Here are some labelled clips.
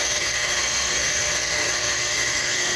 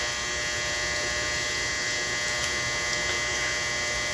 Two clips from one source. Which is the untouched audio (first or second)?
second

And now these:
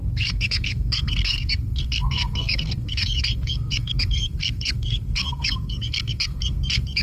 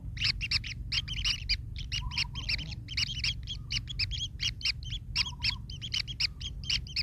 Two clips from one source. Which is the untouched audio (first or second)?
second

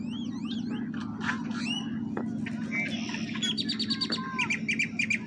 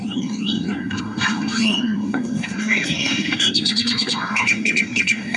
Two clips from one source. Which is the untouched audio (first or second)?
first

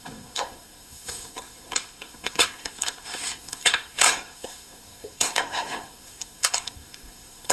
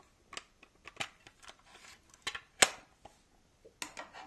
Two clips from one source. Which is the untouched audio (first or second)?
second